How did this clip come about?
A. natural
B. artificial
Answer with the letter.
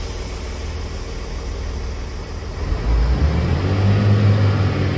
A